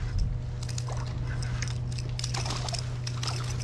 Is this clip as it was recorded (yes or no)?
yes